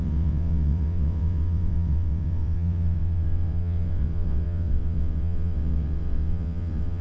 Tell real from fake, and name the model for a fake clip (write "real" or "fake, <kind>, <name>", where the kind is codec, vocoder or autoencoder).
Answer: fake, vocoder, WaveNeXt